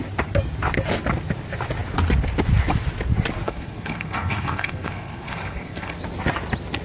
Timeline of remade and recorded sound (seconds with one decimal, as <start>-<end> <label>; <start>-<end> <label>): 0.0-3.4 recorded; 3.4-6.0 remade; 6.0-6.8 recorded